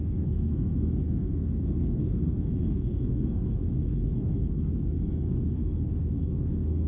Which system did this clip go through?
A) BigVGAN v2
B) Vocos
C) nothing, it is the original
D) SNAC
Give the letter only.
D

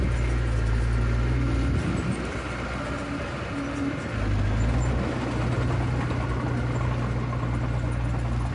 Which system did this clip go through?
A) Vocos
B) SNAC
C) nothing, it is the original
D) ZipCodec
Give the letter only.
C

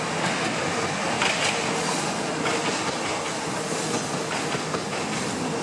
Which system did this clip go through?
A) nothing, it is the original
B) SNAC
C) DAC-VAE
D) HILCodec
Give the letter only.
A